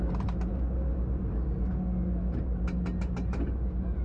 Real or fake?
real